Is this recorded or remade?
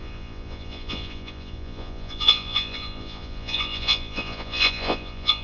remade